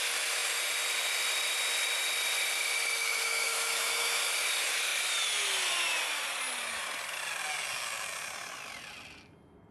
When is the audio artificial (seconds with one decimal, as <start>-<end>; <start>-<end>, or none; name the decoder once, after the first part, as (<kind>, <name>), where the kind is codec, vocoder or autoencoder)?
3.0-4.2 (autoencoder, DAC-VAE)